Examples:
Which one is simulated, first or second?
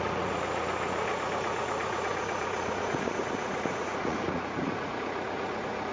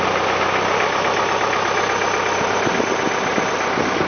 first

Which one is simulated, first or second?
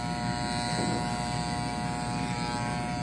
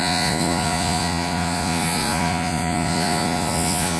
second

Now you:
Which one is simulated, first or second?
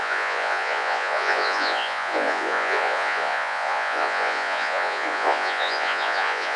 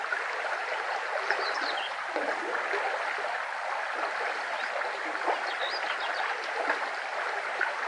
first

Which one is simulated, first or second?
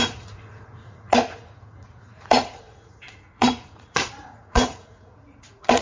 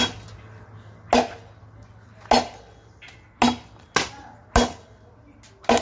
first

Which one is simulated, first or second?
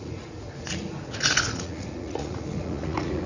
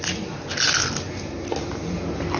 first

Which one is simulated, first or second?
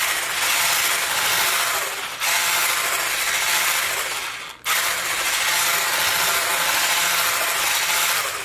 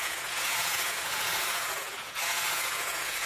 second